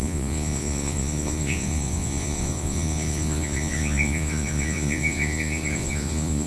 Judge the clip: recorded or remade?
remade